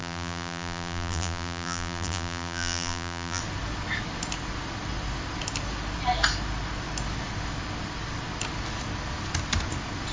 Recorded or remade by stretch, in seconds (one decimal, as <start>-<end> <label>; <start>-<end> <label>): 0.0-3.4 remade; 3.4-10.1 recorded